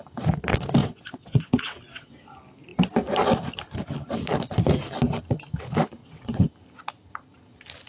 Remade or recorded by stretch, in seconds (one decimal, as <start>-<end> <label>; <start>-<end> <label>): 0.0-0.8 recorded; 0.8-2.1 remade; 2.1-6.0 recorded; 6.0-6.5 remade; 6.5-7.9 recorded